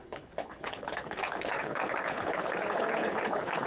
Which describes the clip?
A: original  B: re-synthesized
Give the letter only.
B